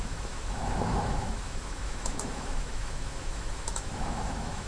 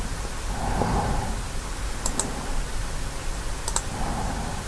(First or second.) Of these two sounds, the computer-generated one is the first